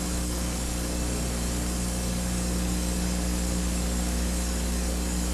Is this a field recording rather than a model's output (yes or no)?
no